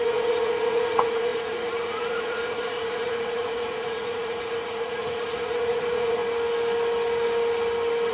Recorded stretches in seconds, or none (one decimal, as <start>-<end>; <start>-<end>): 6.2-8.1